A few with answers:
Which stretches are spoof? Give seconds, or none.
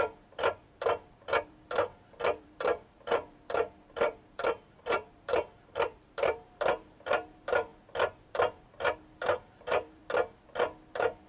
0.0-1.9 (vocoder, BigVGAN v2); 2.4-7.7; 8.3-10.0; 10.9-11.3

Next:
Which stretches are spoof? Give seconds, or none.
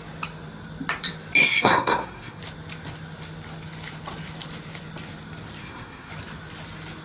1.4-2.4 (codec, SNAC); 5.6-6.1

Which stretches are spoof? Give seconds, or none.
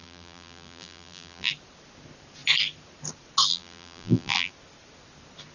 0.0-1.5 (vocoder, BigVGAN v2); 3.5-4.5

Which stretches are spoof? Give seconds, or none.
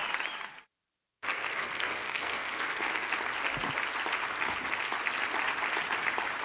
1.1-3.1 (codec, SNAC)